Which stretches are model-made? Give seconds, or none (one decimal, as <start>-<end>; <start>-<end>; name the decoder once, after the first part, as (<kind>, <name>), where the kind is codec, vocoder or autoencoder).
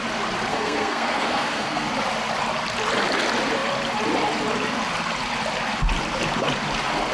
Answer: 0.5-1.9 (codec, SNAC)